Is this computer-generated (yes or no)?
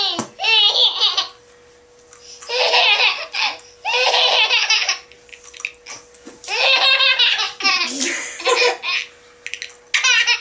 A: no